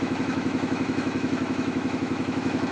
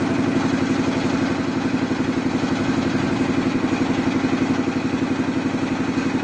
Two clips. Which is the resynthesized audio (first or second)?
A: first